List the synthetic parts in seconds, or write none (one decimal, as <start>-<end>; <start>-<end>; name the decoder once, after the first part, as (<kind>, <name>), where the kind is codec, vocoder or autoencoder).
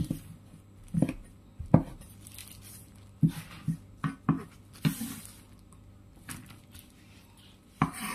none